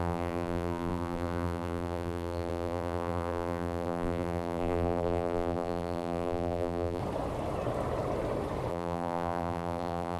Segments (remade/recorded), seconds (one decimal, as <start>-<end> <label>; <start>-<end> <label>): 0.0-7.0 remade; 7.0-8.7 recorded; 8.7-10.2 remade

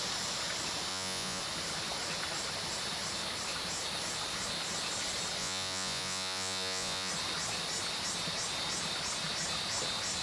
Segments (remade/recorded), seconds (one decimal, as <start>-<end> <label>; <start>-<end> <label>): 0.0-0.9 recorded; 0.9-1.4 remade; 1.4-5.4 recorded; 5.4-7.1 remade; 7.1-10.2 recorded

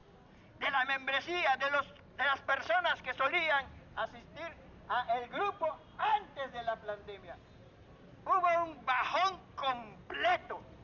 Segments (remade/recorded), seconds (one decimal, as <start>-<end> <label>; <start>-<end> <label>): 0.0-10.8 recorded

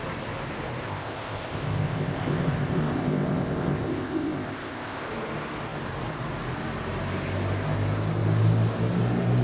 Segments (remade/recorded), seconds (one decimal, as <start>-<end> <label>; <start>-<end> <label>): 0.0-0.8 recorded; 0.8-5.1 remade; 5.1-9.4 recorded

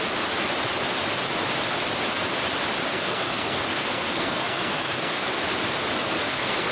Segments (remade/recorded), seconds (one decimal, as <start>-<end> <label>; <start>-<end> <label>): 0.0-2.9 recorded; 2.9-5.3 remade; 5.3-6.2 recorded; 6.2-6.7 remade

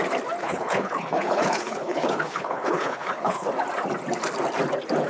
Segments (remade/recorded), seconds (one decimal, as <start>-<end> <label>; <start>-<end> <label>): 0.0-0.4 recorded; 0.4-3.5 remade; 3.5-5.1 recorded